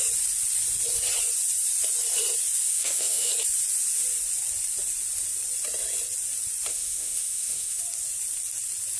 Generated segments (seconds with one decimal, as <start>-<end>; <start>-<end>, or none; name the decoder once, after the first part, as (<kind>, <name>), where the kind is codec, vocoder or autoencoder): 2.7-3.3 (autoencoder, DAC-VAE); 6.7-7.8

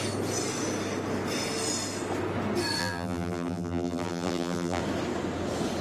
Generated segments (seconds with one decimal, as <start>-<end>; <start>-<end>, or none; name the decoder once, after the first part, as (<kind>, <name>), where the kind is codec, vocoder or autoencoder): 2.8-4.8 (vocoder, BigVGAN v2)

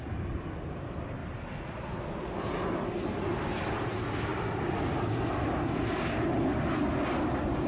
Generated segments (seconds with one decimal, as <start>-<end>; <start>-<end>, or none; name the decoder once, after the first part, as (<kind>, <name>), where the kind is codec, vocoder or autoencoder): 4.3-4.9 (vocoder, BigVGAN v2)

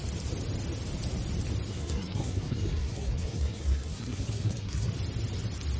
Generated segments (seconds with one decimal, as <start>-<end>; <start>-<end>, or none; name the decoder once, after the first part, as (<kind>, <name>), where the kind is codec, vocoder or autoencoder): 1.7-4.9 (codec, SNAC)

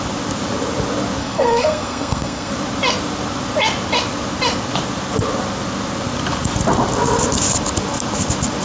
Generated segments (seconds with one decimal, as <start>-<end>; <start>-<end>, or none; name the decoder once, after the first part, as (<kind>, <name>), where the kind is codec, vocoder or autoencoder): 1.2-2.5 (codec, SNAC)

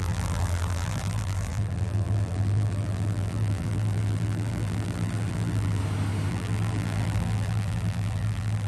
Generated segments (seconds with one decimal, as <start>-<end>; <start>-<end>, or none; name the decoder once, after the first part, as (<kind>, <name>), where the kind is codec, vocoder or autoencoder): 0.0-5.8 (vocoder, BigVGAN v2); 6.3-8.7